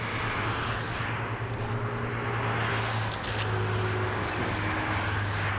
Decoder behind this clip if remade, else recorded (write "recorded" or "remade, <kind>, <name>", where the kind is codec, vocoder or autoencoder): recorded